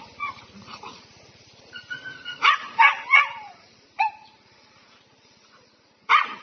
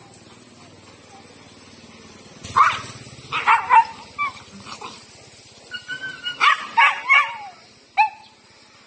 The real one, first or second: second